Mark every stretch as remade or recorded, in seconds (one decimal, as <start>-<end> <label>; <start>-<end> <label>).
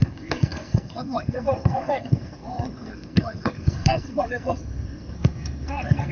0.0-6.1 remade